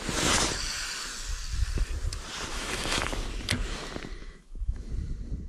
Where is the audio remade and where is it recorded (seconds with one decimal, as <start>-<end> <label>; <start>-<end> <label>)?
0.0-2.5 recorded; 2.5-3.1 remade; 3.1-4.2 recorded; 4.2-4.9 remade; 4.9-5.5 recorded